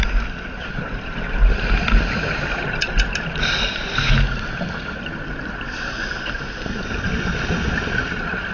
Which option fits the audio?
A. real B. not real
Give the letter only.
A